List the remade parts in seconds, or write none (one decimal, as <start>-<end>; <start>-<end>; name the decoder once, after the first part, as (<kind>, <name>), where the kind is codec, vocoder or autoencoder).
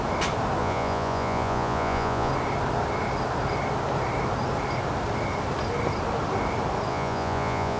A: 0.6-2.3 (vocoder, Vocos); 6.9-7.8